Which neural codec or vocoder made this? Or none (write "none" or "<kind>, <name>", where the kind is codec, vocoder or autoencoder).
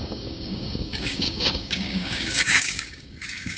codec, DAC